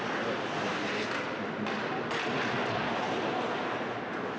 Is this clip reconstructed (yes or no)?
no